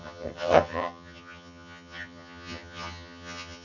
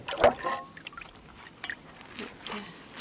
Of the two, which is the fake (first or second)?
first